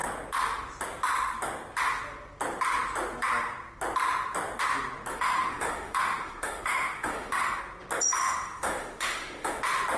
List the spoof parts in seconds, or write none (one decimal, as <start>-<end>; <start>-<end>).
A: 5.1-7.6; 8.2-9.6

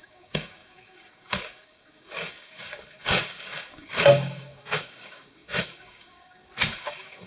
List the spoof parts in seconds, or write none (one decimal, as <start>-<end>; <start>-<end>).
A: 0.0-7.3

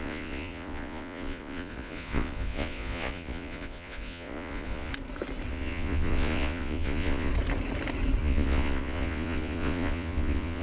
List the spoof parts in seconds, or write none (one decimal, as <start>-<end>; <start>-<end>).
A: 0.0-4.9; 5.5-7.3; 8.2-10.6

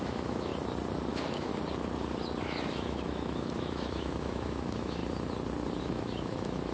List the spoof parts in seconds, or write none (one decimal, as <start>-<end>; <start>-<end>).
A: 0.0-0.5; 1.1-1.5; 2.4-5.0; 5.8-6.7

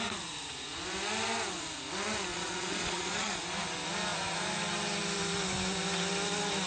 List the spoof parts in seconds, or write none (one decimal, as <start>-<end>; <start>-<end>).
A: 2.3-3.4